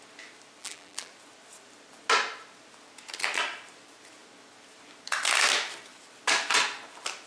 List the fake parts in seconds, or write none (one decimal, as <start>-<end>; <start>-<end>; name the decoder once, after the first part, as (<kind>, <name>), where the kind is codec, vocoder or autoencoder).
0.6-1.1 (vocoder, BigVGAN v2)

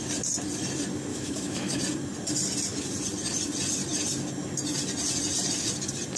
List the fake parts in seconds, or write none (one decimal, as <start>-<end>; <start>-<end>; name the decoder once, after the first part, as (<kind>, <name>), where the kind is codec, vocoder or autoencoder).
1.1-1.8 (autoencoder, DAC-VAE)

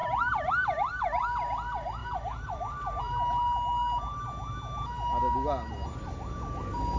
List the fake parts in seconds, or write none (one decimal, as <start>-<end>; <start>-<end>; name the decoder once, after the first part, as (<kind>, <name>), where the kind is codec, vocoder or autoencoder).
0.0-0.5 (vocoder, BigVGAN v2); 2.0-3.0